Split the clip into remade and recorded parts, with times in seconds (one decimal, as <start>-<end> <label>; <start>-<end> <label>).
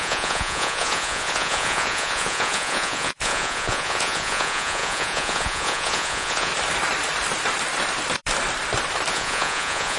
0.0-6.5 remade; 6.5-9.1 recorded; 9.1-10.0 remade